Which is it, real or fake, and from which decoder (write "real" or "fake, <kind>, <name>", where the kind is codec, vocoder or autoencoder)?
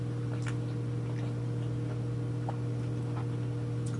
real